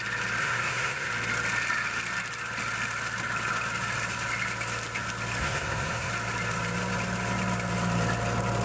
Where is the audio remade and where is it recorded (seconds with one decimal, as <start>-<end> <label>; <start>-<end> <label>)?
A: 0.0-0.4 recorded; 0.4-1.1 remade; 1.1-5.4 recorded; 5.4-6.1 remade; 6.1-8.6 recorded